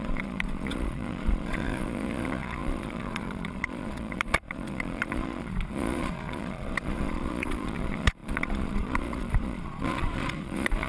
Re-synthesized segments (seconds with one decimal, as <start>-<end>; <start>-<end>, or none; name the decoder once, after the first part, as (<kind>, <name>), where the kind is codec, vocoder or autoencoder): 0.0-10.9 (vocoder, Vocos)